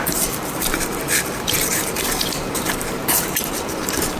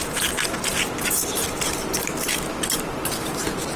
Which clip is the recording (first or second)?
second